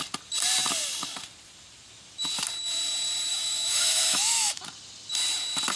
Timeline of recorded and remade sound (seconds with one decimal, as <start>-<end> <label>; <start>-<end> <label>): 0.0-3.3 recorded; 3.3-4.6 remade; 4.6-5.8 recorded